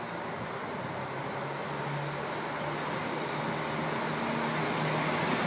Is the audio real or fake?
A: real